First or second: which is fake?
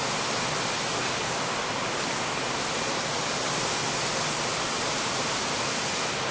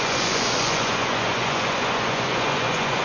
second